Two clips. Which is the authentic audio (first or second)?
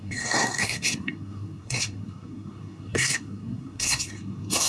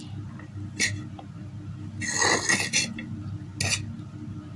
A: second